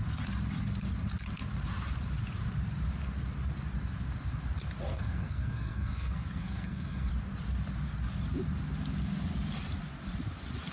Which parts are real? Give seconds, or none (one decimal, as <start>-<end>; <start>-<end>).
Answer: 0.0-4.9; 7.1-10.7